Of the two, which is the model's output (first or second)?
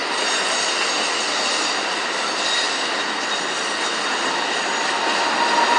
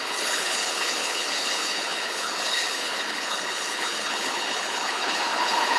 second